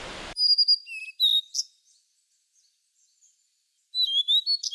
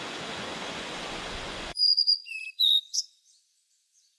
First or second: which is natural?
first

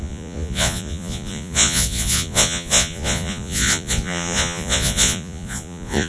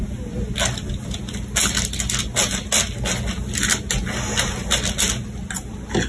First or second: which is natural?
second